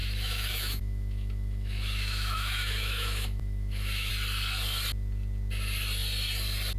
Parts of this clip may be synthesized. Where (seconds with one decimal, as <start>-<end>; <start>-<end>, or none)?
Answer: 0.0-4.1